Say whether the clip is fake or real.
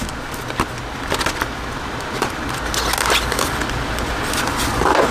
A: real